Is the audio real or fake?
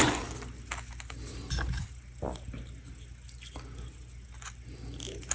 real